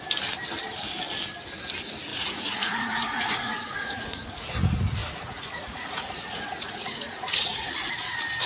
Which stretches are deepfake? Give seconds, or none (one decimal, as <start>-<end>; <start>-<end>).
2.1-4.5; 5.0-7.9